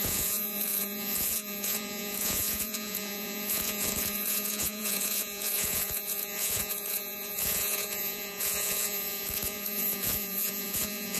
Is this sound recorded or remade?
remade